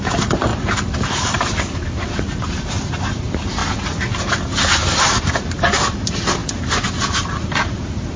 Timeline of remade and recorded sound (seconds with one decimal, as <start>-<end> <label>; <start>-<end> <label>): 0.0-3.6 remade; 3.6-5.0 recorded; 5.0-6.4 remade; 6.4-7.3 recorded; 7.3-8.2 remade